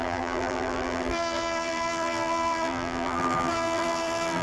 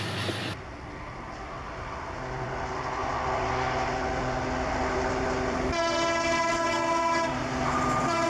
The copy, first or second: first